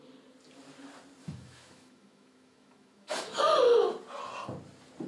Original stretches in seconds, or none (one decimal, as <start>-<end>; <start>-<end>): 0.0-1.2; 3.4-5.1